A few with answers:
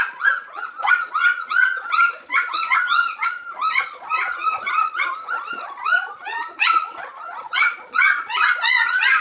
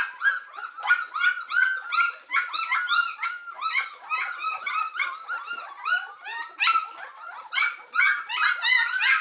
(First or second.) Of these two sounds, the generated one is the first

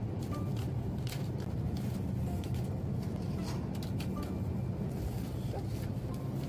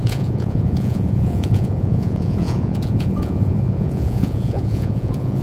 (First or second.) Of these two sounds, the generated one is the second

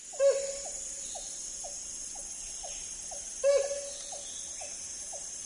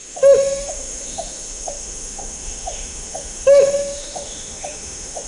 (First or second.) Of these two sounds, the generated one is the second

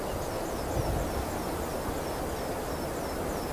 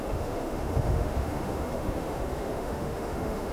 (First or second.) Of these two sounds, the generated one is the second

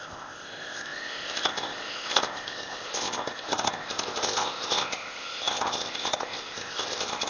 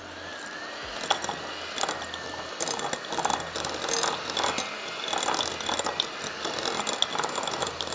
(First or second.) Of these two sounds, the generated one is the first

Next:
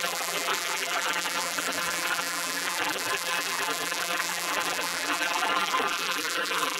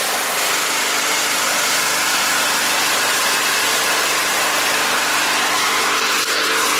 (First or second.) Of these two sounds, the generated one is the first